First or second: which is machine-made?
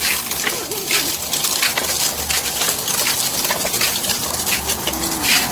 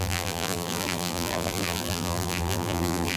second